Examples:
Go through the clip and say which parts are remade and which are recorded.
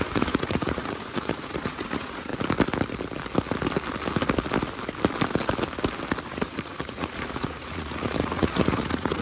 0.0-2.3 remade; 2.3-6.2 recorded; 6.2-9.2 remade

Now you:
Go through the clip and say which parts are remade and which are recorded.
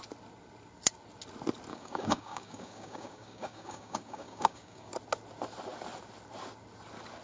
0.0-1.7 recorded; 1.7-4.9 remade; 4.9-7.2 recorded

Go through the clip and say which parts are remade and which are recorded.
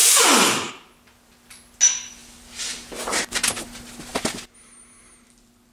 0.0-5.7 recorded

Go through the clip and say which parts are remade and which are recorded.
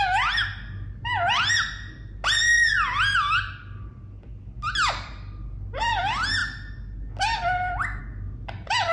0.0-8.9 recorded